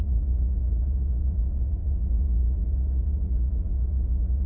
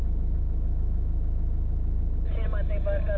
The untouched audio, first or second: second